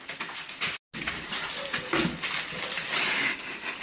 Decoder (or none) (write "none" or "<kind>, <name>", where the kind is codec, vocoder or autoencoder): none